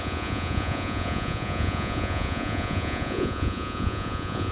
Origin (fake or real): fake